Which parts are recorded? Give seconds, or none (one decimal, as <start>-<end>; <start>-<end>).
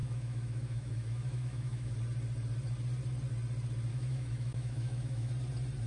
1.9-3.9; 5.3-5.9